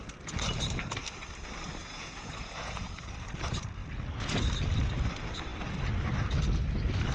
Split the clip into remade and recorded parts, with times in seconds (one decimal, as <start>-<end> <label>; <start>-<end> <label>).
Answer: 0.0-1.8 recorded; 1.8-2.8 remade; 2.8-7.1 recorded